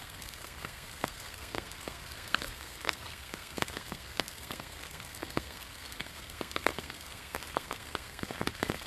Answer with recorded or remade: remade